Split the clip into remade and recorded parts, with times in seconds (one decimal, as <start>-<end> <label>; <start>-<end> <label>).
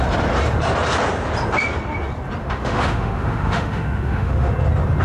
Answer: 0.0-2.4 recorded; 2.4-4.5 remade; 4.5-5.0 recorded